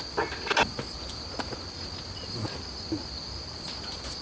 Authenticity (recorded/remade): recorded